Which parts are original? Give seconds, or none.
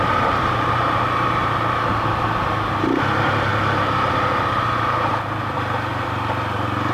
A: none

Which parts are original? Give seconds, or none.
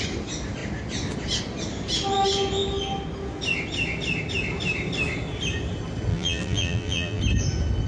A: 0.0-6.1; 7.2-7.9